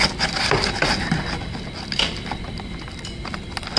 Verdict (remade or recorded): recorded